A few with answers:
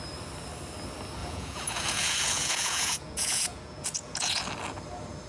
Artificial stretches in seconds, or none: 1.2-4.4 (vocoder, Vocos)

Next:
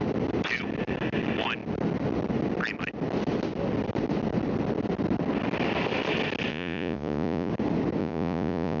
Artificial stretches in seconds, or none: 6.5-7.5 (vocoder, Vocos); 8.0-8.8

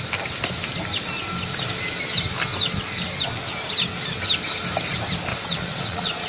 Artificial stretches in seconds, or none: 5.3-6.3 (vocoder, Vocos)

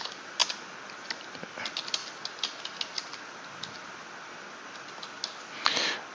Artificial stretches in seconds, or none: none

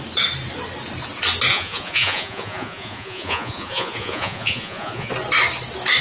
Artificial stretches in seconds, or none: 1.5-5.1 (vocoder, Vocos)

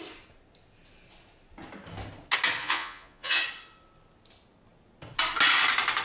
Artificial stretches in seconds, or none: 2.6-3.4 (vocoder, Vocos)

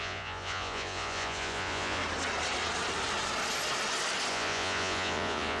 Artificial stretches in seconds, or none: 0.0-2.0 (vocoder, Vocos); 4.3-5.6